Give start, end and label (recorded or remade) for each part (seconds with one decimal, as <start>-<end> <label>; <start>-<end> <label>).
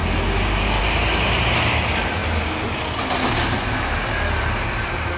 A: 0.0-0.8 remade; 0.8-5.2 recorded